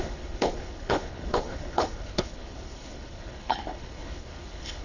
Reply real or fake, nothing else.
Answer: fake